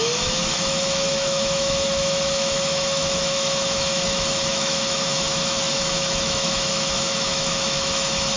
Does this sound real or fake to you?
fake